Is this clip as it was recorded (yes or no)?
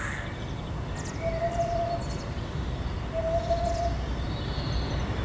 yes